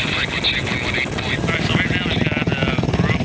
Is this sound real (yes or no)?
yes